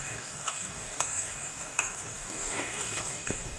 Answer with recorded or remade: remade